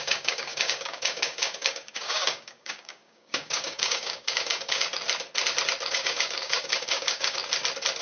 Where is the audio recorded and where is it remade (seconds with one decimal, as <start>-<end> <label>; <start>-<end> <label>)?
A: 0.0-4.9 remade; 4.9-5.9 recorded; 5.9-7.4 remade; 7.4-8.0 recorded